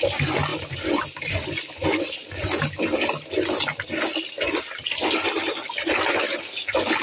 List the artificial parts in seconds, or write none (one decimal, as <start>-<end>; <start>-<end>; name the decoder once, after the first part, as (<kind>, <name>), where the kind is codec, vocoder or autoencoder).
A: 0.5-2.8 (vocoder, BigVGAN v2)